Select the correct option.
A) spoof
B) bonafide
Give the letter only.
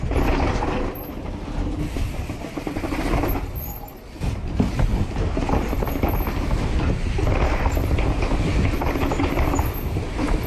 B